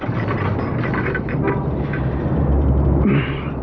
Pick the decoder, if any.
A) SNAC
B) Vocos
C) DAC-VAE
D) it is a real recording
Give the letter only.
D